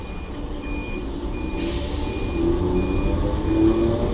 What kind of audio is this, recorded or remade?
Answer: recorded